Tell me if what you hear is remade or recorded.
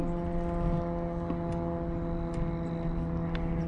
recorded